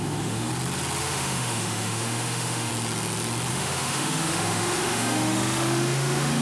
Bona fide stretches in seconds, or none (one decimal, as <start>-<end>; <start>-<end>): 0.5-1.0; 2.7-3.5